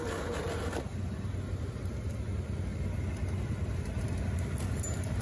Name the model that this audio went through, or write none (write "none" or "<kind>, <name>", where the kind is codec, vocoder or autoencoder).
none